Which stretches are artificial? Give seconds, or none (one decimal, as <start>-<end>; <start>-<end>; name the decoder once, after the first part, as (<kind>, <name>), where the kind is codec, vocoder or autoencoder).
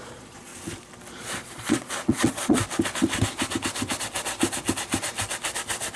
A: 0.0-0.5 (vocoder, Vocos); 1.1-2.6